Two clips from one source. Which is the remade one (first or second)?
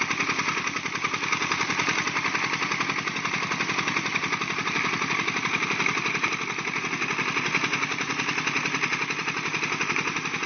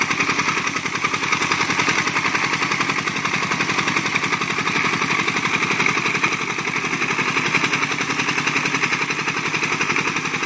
first